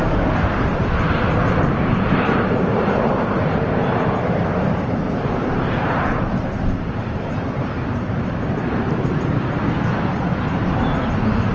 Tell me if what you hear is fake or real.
fake